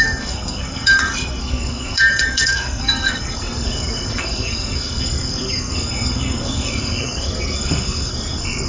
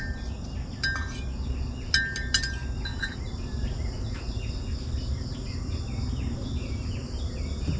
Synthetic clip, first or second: first